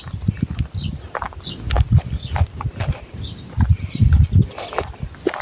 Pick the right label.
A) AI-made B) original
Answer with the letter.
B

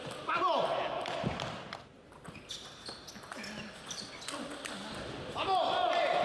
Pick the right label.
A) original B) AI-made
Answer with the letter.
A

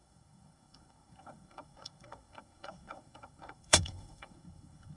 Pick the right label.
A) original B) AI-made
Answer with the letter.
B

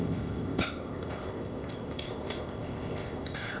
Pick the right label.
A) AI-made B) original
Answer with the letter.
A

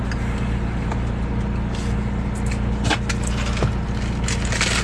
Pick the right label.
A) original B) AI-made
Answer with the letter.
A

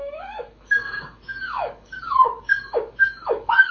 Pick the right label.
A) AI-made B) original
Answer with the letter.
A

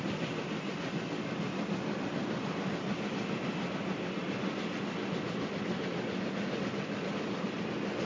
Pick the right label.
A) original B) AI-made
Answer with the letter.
A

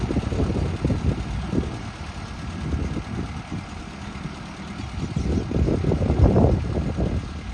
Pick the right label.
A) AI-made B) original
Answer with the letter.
B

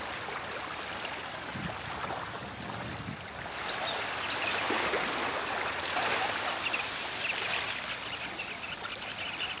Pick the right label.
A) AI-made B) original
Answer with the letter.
B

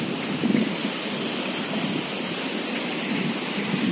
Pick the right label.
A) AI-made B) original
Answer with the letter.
B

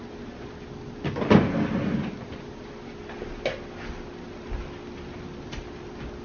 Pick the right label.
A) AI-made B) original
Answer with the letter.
B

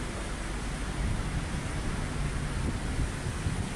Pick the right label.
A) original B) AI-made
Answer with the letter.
A